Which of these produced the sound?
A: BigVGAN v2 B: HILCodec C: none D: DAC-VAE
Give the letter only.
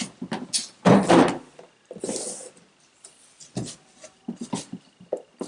C